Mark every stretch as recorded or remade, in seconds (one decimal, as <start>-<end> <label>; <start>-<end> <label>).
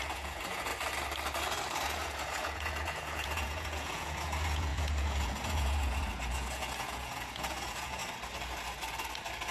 0.0-0.7 remade; 0.7-1.8 recorded; 1.8-8.0 remade; 8.0-9.5 recorded